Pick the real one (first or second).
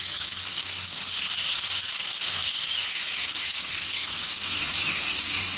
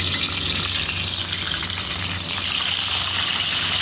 second